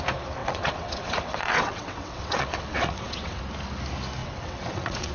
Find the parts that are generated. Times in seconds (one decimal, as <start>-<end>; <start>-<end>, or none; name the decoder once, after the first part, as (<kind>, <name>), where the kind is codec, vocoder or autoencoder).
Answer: 0.4-3.4 (vocoder, WaveNeXt); 4.2-5.1